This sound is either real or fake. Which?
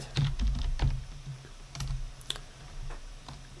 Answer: fake